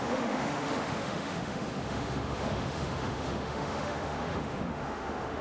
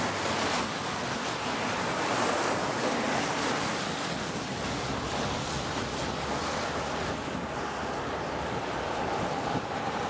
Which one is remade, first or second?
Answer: first